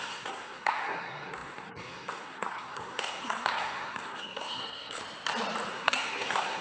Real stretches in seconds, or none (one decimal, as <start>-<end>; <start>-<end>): 5.0-5.7